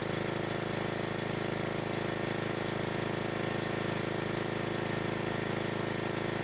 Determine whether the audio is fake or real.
real